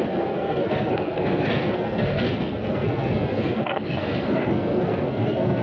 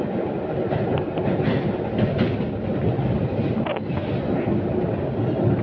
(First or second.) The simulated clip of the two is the first